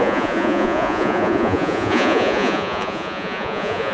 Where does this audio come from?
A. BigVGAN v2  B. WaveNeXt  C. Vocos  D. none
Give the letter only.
C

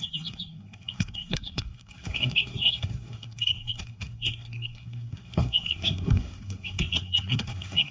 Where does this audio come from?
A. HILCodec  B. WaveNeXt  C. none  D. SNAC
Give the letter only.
D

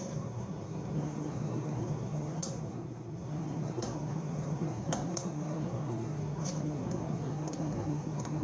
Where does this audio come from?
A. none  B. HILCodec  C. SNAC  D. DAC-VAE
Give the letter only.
C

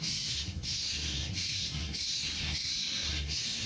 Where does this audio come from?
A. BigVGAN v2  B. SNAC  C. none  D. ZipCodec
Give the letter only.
B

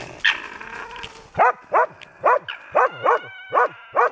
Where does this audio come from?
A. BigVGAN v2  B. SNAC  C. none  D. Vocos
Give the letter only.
C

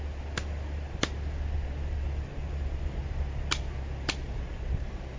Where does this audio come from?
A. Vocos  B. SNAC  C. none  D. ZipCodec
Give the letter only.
C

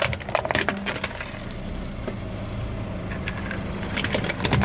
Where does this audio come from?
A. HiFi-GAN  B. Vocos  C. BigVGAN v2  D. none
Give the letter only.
D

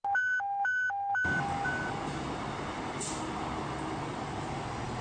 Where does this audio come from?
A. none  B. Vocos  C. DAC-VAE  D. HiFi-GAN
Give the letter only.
A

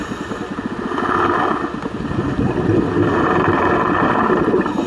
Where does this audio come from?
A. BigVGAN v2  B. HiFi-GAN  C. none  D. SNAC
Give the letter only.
C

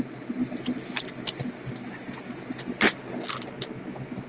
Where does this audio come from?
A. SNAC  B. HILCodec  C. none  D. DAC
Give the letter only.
C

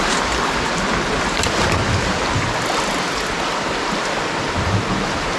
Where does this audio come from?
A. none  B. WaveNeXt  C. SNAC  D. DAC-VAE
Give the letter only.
A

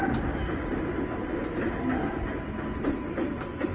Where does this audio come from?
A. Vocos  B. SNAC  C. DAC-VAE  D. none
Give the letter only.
D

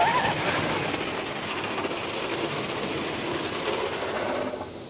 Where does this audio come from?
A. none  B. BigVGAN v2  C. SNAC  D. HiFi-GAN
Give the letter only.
A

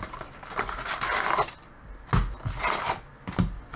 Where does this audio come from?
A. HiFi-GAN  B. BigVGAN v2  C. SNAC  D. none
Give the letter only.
D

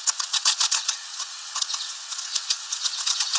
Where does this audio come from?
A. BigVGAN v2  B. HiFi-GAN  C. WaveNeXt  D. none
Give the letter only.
C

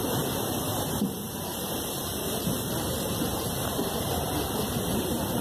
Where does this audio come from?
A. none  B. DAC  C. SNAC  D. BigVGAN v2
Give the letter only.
D